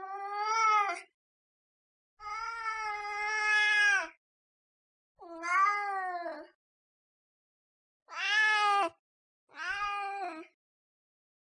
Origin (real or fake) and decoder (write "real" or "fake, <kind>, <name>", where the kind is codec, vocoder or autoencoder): real